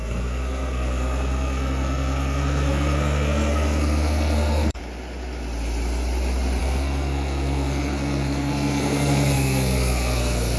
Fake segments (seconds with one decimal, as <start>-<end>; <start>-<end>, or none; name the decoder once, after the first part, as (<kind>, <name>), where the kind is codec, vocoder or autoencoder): 0.0-4.8 (codec, SNAC); 6.6-10.6